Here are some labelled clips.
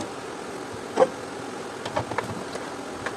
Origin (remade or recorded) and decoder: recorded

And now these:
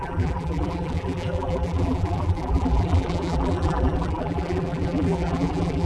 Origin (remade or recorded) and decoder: remade, vocoder, BigVGAN v2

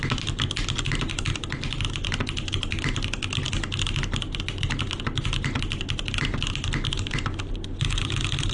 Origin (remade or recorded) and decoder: recorded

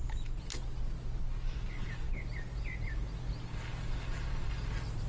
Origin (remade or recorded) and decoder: recorded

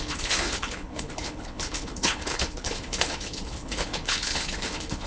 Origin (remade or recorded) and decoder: remade, codec, HILCodec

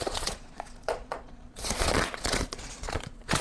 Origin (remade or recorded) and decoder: remade, vocoder, Vocos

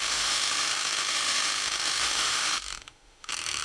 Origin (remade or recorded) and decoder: remade, autoencoder, DAC-VAE